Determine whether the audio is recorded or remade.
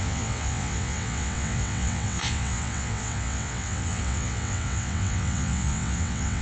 remade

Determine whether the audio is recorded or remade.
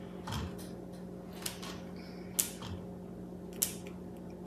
recorded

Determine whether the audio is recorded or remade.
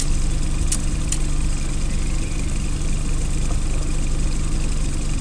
recorded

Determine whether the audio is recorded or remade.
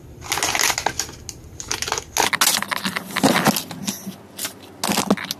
recorded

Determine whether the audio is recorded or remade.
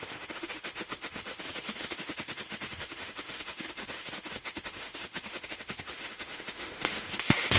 remade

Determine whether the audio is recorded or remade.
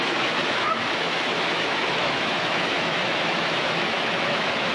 remade